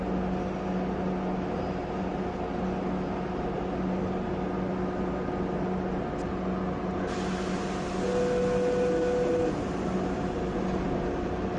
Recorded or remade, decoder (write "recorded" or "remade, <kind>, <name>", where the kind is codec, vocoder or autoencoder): recorded